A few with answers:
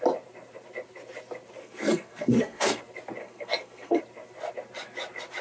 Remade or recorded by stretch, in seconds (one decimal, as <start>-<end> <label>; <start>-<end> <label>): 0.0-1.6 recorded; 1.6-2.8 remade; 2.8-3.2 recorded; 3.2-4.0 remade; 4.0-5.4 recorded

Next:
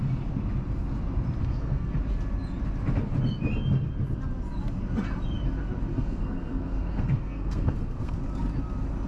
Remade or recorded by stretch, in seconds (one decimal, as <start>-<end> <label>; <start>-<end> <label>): 0.0-1.4 recorded; 1.4-1.9 remade; 1.9-5.9 recorded; 5.9-8.2 remade; 8.2-9.1 recorded

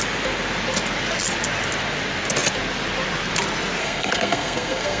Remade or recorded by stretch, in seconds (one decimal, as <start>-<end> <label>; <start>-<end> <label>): 0.0-3.8 recorded; 3.8-5.0 remade

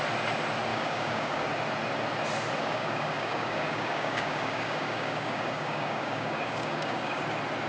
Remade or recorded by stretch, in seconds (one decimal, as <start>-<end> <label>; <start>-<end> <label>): 0.0-0.7 recorded; 0.7-1.5 remade; 1.5-2.6 recorded; 2.6-7.2 remade; 7.2-7.7 recorded

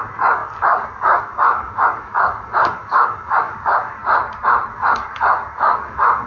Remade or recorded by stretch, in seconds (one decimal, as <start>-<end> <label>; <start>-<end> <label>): 0.0-4.0 remade; 4.0-4.7 recorded; 4.7-6.3 remade